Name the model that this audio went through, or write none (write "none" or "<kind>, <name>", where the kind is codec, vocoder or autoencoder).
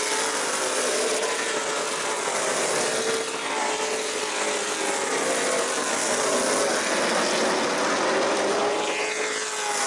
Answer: none